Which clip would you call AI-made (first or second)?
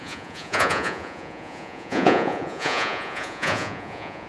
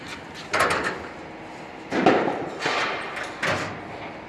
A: first